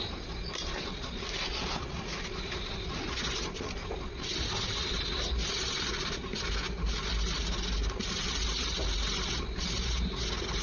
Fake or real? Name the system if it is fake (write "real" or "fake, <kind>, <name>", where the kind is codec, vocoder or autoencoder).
real